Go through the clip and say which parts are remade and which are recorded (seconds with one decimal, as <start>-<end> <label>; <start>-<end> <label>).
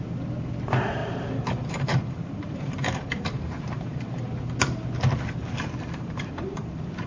0.0-1.0 recorded; 1.0-4.2 remade; 4.2-5.4 recorded; 5.4-7.1 remade